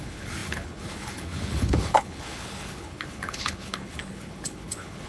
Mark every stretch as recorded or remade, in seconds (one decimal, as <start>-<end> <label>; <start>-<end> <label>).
0.0-5.1 remade

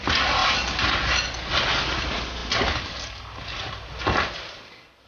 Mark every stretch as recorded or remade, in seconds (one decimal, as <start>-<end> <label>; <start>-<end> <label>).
0.0-5.1 recorded

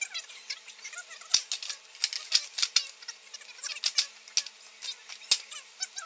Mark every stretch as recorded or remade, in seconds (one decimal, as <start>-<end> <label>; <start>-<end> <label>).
0.0-6.1 recorded

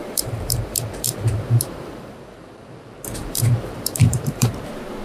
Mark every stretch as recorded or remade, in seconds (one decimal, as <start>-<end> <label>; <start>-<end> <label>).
0.0-2.8 remade; 2.8-3.2 recorded; 3.2-4.5 remade; 4.5-5.0 recorded

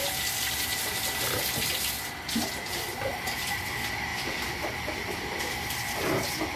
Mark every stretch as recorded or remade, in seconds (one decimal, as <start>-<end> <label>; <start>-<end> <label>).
0.0-2.5 recorded; 2.5-6.6 remade